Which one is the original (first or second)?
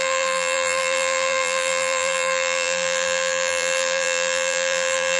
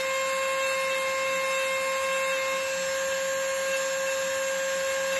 second